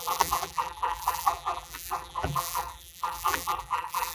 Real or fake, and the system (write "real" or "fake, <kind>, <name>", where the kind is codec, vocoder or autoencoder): fake, vocoder, BigVGAN v2